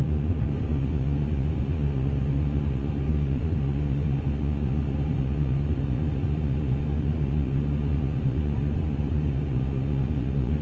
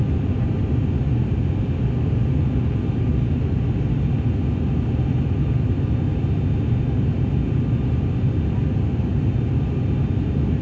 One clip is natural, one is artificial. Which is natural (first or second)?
second